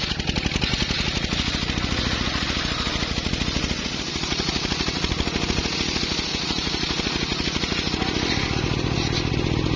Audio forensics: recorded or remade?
recorded